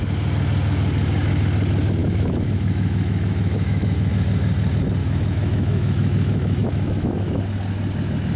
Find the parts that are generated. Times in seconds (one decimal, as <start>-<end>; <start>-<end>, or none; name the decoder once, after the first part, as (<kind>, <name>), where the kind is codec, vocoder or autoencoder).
2.0-4.1 (autoencoder, DAC-VAE); 5.0-7.4